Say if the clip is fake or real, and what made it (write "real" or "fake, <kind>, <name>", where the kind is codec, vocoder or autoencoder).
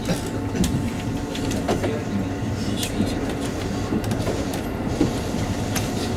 real